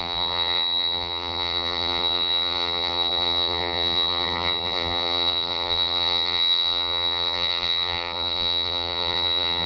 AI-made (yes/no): yes